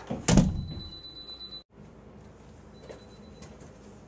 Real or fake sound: real